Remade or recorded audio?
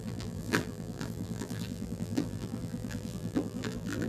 remade